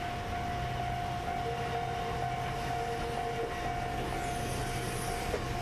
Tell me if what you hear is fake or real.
real